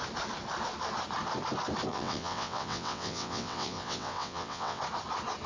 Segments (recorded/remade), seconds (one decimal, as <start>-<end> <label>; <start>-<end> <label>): 0.0-1.9 recorded; 1.9-4.8 remade; 4.8-5.5 recorded